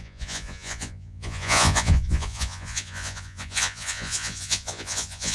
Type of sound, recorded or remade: remade